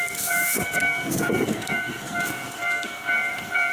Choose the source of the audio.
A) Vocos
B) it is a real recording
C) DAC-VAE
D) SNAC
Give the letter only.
D